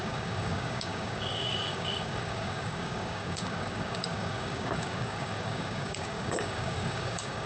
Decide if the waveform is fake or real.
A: fake